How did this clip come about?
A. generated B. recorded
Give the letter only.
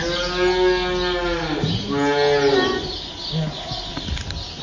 B